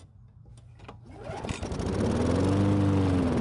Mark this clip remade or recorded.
recorded